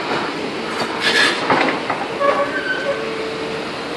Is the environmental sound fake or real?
real